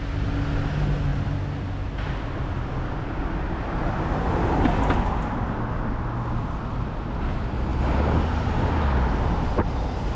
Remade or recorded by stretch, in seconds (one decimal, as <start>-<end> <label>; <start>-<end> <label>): 0.0-10.2 recorded